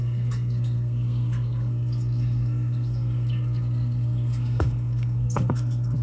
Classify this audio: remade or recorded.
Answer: remade